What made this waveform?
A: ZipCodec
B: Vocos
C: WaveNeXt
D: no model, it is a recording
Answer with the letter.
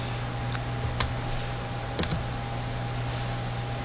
D